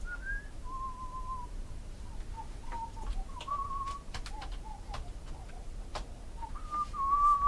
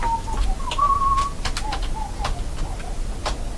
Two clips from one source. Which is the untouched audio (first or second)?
second